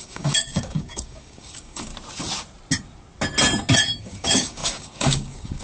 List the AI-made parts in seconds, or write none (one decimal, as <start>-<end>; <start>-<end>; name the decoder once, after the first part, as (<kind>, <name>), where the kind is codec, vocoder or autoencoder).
0.0-1.9 (codec, DAC); 4.0-5.6